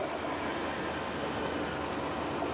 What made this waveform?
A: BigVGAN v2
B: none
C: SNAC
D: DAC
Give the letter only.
B